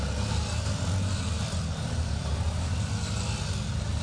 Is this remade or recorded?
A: recorded